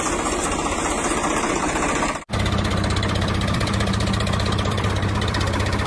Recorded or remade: remade